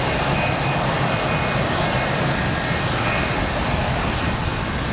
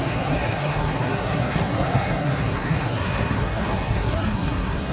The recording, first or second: first